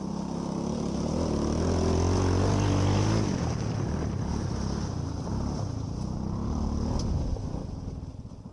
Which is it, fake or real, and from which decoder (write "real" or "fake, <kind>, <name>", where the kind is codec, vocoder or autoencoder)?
real